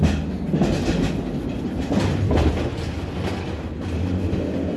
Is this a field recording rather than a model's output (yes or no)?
yes